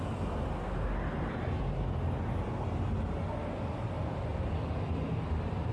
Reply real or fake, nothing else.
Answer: real